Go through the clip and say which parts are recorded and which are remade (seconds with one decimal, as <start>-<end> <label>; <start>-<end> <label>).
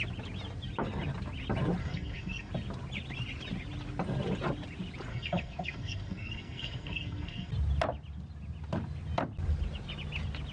0.0-1.8 recorded; 1.8-2.5 remade; 2.5-5.1 recorded; 5.1-7.5 remade; 7.5-10.5 recorded